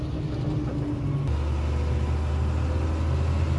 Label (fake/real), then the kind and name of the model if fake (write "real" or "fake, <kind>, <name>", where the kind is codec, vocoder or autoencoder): real